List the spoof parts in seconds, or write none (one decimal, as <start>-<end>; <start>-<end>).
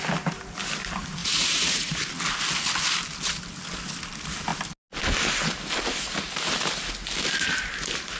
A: 1.2-2.0